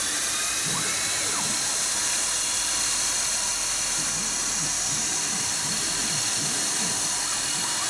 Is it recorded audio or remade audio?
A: recorded